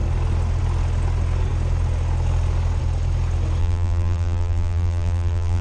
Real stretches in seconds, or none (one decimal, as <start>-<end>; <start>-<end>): 0.0-3.6